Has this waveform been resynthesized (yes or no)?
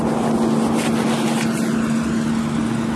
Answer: no